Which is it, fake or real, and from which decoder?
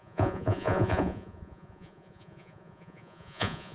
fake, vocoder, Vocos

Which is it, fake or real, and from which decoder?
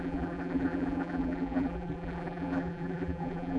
fake, vocoder, BigVGAN v2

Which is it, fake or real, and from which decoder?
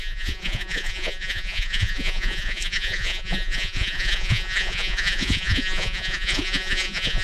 fake, vocoder, Vocos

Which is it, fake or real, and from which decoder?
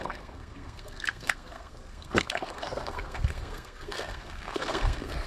fake, codec, SNAC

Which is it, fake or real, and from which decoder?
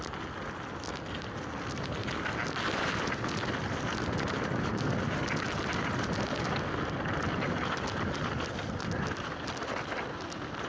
real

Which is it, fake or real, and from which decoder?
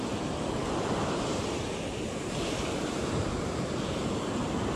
real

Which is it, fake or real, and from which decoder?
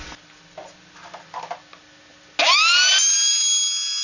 real